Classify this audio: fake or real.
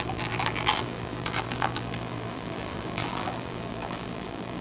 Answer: fake